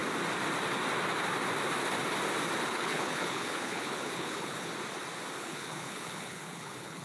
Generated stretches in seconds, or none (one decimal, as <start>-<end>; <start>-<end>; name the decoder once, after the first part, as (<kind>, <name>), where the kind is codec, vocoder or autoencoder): 2.7-4.7 (codec, HILCodec); 5.4-7.0